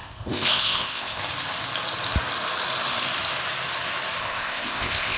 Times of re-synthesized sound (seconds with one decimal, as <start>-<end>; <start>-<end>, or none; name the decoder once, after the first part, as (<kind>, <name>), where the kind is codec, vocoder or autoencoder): 0.0-1.2 (codec, ZipCodec); 4.2-5.2

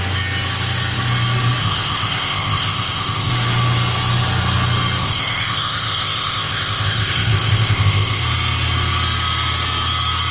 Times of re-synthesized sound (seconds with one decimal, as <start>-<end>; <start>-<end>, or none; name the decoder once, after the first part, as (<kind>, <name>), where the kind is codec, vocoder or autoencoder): 1.6-3.3 (codec, ZipCodec); 5.0-8.2

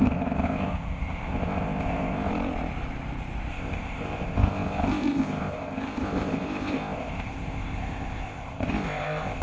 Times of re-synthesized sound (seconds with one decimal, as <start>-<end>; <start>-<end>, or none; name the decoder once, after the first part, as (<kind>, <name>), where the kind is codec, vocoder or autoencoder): 0.0-2.3 (codec, ZipCodec); 3.5-9.4

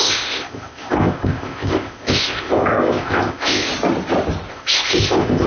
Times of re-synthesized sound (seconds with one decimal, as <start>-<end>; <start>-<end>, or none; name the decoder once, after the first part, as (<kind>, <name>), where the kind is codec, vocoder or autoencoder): 0.0-3.7 (codec, ZipCodec); 4.5-5.5

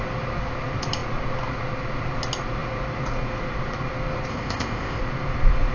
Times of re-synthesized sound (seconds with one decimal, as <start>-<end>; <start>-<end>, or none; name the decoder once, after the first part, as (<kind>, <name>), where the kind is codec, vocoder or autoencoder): 4.3-5.0 (codec, ZipCodec)

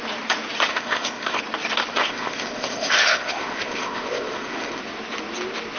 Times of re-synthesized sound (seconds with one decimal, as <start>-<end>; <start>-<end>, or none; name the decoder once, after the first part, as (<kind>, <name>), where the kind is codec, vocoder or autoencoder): 0.7-1.4 (codec, ZipCodec); 1.9-4.8

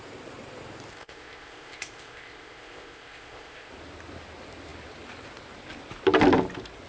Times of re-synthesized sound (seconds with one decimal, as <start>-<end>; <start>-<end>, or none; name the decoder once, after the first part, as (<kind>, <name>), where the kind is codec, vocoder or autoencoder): 0.9-3.7 (codec, ZipCodec)